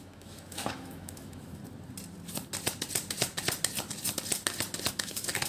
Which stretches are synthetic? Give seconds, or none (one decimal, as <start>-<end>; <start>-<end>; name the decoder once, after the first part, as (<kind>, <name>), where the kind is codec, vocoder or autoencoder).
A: 0.0-1.6 (autoencoder, DAC-VAE); 4.9-5.5